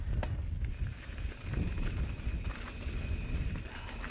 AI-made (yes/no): no